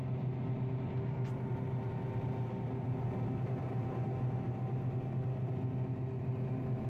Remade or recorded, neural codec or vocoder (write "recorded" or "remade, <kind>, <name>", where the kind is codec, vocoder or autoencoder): recorded